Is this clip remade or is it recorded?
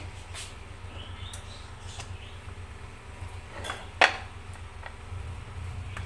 recorded